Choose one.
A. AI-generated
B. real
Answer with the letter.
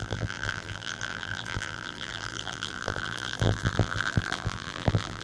A